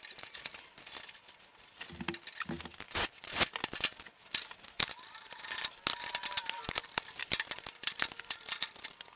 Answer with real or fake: real